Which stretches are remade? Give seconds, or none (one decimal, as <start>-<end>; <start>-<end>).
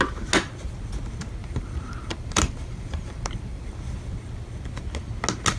1.4-3.7